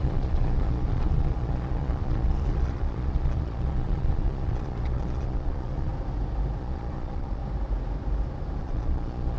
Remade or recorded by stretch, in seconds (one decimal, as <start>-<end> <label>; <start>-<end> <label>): 0.0-5.9 remade; 5.9-6.6 recorded; 6.6-7.4 remade; 7.4-8.6 recorded; 8.6-9.4 remade